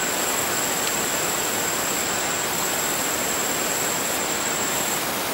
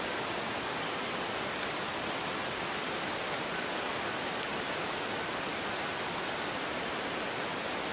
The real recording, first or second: second